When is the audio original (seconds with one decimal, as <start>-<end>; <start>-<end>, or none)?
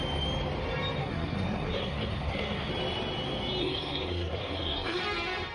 0.0-1.0; 2.7-3.6; 5.0-5.5